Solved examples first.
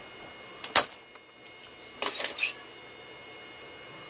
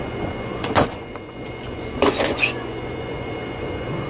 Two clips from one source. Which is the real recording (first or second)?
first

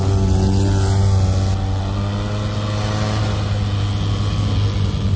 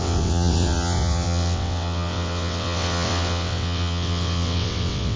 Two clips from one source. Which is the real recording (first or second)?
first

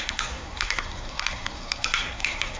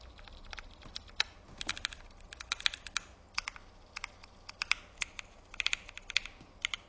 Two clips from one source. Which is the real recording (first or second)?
second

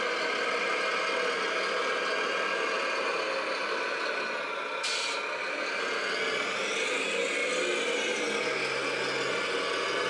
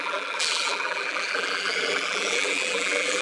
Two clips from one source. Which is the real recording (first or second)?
first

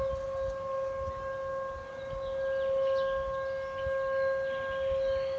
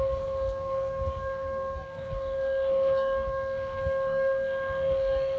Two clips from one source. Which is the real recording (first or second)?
first